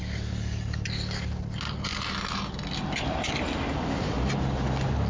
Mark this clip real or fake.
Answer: real